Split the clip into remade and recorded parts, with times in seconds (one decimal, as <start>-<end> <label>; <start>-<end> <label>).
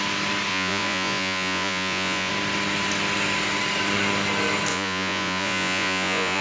0.0-0.5 recorded; 0.5-2.3 remade; 2.3-4.7 recorded; 4.7-6.4 remade